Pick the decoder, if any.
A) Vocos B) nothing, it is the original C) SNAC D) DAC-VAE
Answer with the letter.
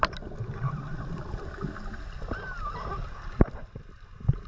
B